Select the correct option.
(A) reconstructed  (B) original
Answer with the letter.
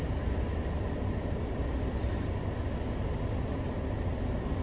B